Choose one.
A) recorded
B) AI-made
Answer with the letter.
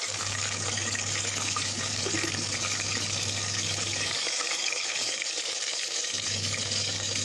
B